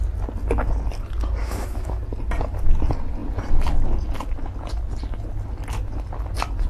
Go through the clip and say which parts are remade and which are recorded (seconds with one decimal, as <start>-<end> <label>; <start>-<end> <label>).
0.0-1.4 recorded; 1.4-2.0 remade; 2.0-6.7 recorded